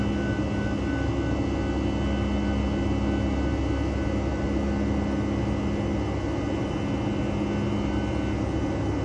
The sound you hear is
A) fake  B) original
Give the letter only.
B